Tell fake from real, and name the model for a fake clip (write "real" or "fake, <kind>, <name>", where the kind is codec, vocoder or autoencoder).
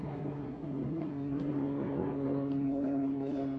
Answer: fake, codec, SNAC